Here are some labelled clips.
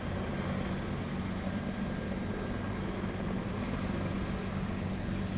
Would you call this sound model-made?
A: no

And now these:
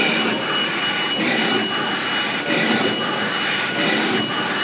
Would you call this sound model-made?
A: no